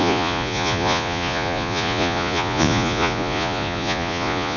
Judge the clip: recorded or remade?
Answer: remade